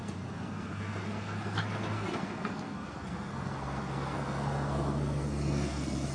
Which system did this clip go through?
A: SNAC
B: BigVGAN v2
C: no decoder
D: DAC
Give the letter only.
A